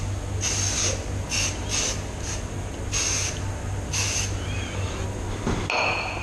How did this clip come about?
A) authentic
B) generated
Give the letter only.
A